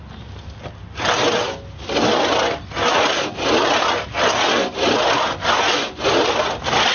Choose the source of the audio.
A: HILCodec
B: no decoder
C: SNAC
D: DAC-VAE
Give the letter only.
B